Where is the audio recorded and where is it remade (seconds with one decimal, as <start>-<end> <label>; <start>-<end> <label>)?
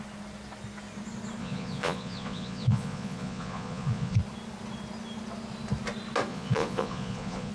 0.0-1.4 recorded; 1.4-4.2 remade; 4.2-6.3 recorded; 6.3-7.5 remade